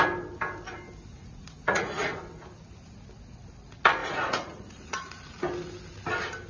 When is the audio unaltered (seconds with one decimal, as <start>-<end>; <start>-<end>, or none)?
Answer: 0.0-1.1; 2.2-4.0; 5.5-6.5